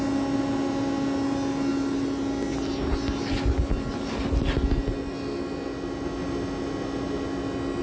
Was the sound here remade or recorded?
recorded